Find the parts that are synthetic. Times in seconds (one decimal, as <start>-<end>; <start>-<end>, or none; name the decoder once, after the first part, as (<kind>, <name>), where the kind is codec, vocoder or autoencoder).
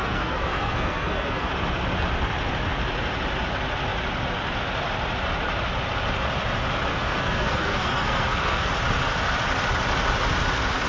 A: 0.0-1.5 (codec, SNAC); 6.9-8.7